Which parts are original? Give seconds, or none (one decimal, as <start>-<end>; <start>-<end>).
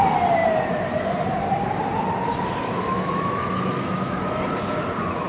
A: 0.0-2.7; 4.2-5.3